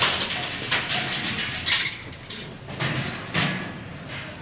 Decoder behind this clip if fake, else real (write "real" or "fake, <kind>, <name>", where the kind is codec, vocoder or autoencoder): real